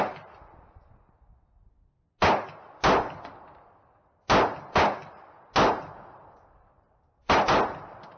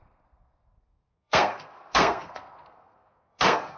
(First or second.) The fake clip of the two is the second